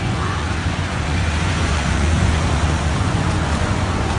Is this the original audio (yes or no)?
no